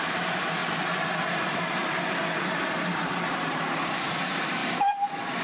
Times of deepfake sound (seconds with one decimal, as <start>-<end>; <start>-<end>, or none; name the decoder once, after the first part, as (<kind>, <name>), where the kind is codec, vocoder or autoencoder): 0.0-0.6 (vocoder, BigVGAN v2); 2.7-4.6